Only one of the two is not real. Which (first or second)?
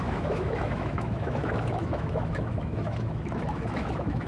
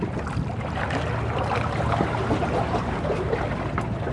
first